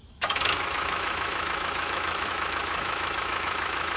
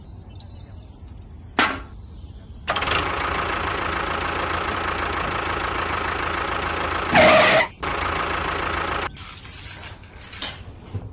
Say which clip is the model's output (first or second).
first